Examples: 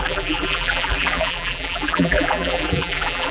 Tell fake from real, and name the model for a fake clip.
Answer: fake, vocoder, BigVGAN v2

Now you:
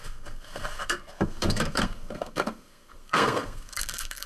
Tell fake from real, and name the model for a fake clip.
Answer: fake, codec, SNAC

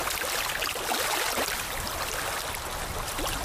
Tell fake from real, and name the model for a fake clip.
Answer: real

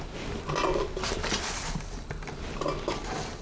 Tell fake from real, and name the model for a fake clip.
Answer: real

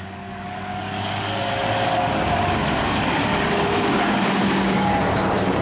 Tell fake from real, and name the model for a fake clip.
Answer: fake, codec, DAC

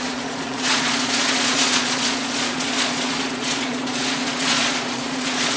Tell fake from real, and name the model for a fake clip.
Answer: fake, vocoder, Vocos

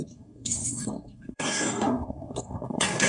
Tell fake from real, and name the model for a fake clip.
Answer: fake, codec, SNAC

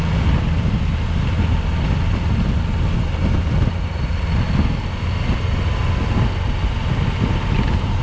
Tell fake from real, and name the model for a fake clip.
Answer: real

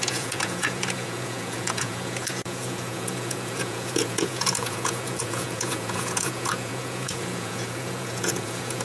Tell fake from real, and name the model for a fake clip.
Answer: fake, vocoder, Vocos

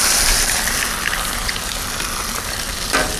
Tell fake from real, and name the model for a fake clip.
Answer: fake, vocoder, BigVGAN v2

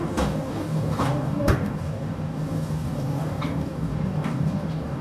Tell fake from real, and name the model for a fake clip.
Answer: fake, codec, DAC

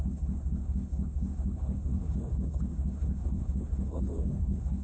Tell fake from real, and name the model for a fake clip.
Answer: fake, autoencoder, DAC-VAE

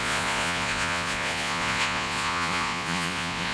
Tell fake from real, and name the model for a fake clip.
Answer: fake, vocoder, Vocos